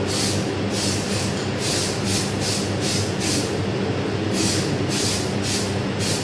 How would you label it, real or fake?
real